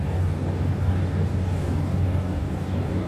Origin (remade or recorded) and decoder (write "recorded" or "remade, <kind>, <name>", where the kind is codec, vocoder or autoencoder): remade, codec, DAC